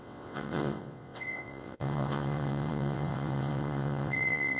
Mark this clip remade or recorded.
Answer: remade